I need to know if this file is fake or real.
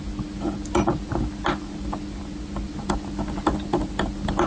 real